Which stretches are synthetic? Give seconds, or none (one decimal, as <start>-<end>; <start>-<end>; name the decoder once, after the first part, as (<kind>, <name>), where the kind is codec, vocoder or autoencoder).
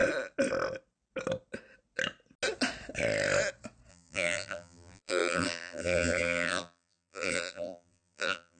3.9-8.6 (vocoder, BigVGAN v2)